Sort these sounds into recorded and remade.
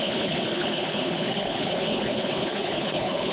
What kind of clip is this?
remade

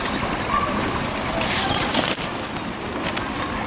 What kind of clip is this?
recorded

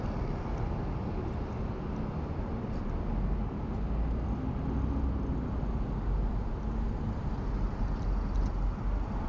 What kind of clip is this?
recorded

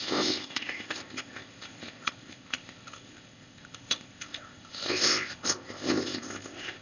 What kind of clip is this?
remade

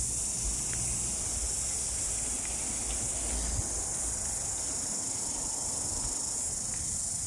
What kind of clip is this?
recorded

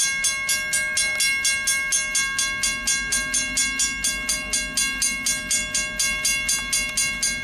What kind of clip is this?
recorded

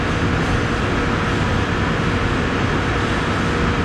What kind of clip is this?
recorded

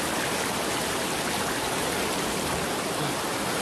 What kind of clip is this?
recorded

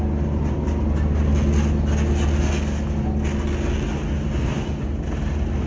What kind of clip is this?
recorded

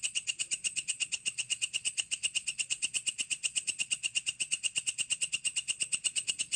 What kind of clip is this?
remade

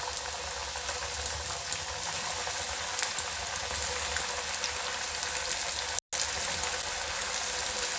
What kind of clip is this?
recorded